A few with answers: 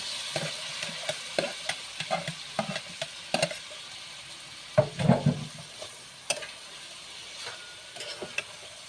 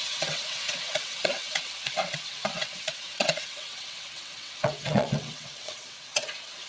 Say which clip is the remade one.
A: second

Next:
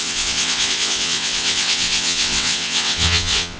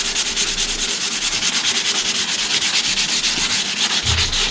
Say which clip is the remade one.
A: first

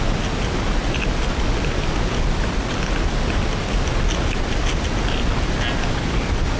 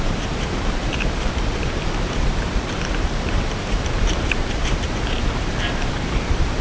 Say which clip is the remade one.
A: second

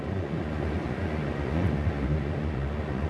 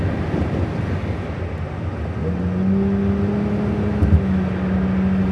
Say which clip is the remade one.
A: first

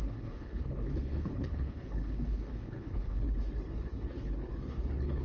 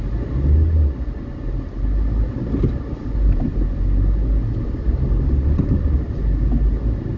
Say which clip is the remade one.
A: first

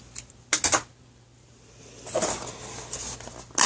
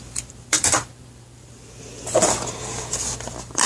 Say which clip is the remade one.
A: second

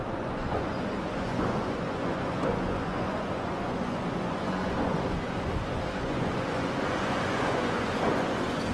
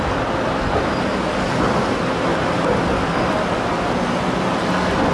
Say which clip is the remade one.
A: first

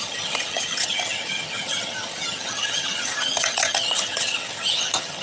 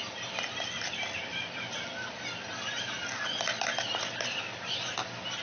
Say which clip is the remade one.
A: first